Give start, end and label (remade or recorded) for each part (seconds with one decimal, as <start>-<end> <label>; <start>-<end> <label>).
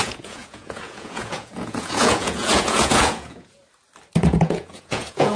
0.0-3.6 remade; 3.6-4.2 recorded; 4.2-5.4 remade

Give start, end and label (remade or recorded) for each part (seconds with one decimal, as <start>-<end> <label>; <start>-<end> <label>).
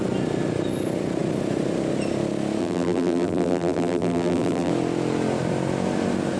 0.0-2.6 recorded; 2.6-4.7 remade; 4.7-6.4 recorded